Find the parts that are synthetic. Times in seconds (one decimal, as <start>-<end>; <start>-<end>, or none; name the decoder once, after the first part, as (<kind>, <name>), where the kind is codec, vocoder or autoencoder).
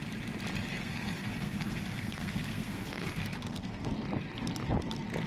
0.7-3.9 (codec, SNAC)